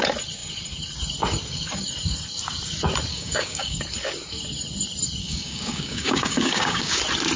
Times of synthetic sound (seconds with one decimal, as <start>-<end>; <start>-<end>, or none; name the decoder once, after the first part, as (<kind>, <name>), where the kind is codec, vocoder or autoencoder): 3.1-3.8 (codec, DAC); 5.2-7.0